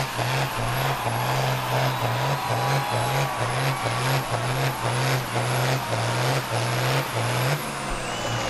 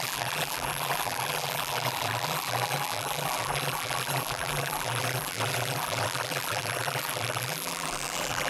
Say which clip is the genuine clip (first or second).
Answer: first